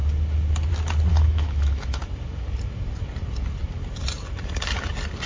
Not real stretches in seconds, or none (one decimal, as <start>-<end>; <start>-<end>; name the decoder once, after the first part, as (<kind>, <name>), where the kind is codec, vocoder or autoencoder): 1.1-2.0 (autoencoder, DAC-VAE)